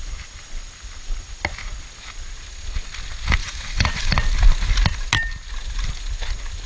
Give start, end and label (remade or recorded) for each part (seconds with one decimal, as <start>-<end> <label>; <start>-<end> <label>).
0.0-3.4 recorded; 3.4-4.1 remade; 4.1-6.7 recorded